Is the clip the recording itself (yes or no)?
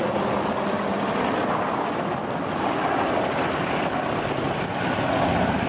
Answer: yes